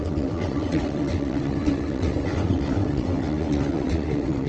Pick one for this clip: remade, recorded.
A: remade